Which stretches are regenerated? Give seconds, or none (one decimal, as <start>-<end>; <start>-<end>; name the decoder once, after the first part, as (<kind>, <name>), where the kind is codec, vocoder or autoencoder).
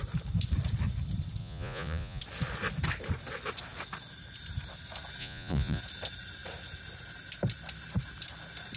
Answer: 1.4-2.2 (vocoder, Vocos); 5.2-5.8